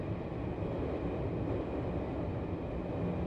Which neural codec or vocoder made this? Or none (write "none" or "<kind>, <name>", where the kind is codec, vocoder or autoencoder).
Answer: none